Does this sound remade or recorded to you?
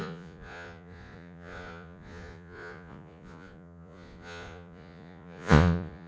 remade